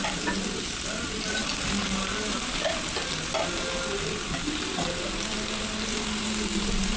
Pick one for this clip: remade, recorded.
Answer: recorded